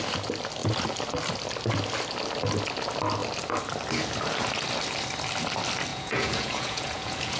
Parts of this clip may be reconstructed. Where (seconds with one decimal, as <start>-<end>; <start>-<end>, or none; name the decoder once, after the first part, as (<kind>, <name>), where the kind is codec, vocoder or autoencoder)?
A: 5.9-7.4 (vocoder, Vocos)